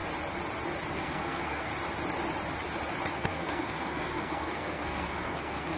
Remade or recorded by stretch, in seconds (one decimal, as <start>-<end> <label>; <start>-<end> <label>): 0.0-0.9 recorded; 0.9-1.7 remade; 1.7-3.1 recorded; 3.1-5.8 remade